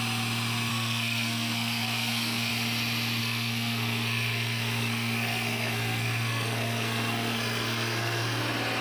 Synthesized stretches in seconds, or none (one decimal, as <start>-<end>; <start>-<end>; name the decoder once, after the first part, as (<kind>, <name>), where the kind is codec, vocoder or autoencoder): 0.7-2.5 (codec, SNAC); 3.2-8.4